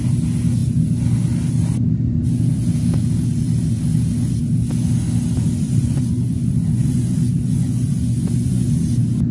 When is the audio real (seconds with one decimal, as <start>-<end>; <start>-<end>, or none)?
0.0-5.8; 8.8-9.3